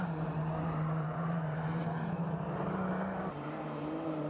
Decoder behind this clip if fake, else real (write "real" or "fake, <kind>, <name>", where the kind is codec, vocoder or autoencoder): fake, vocoder, BigVGAN v2